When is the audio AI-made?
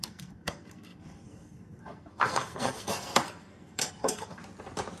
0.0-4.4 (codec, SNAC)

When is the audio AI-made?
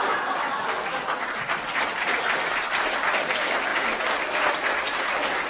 none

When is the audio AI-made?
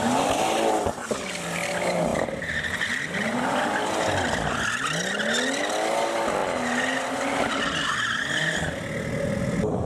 none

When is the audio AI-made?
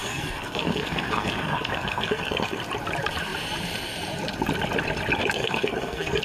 0.0-2.6 (codec, SNAC); 5.2-6.2